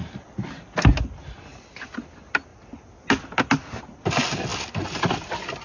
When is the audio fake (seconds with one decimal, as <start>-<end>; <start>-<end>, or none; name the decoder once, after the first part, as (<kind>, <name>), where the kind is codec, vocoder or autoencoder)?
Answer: none